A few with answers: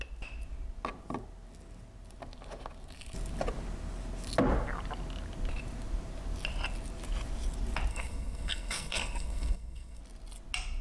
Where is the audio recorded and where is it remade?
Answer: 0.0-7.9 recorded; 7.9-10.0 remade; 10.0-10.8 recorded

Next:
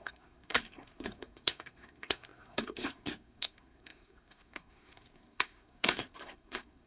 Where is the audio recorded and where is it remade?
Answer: 0.0-6.9 remade

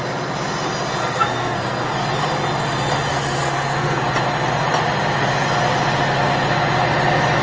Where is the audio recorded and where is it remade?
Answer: 0.0-1.0 recorded; 1.0-1.9 remade; 1.9-3.1 recorded; 3.1-4.0 remade; 4.0-7.4 recorded

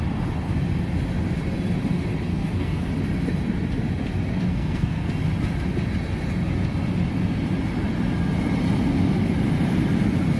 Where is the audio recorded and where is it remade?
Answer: 0.0-2.3 recorded; 2.3-2.9 remade; 2.9-4.4 recorded; 4.4-5.1 remade; 5.1-10.4 recorded

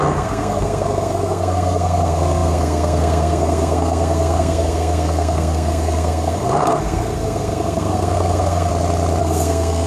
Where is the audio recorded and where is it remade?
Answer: 0.0-8.7 remade; 8.7-9.2 recorded; 9.2-9.9 remade